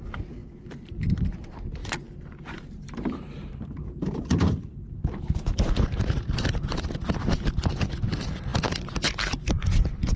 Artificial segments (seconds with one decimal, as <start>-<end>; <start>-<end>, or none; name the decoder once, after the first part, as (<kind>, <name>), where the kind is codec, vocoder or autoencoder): 1.8-6.8 (vocoder, BigVGAN v2)